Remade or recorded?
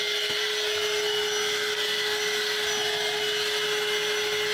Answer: recorded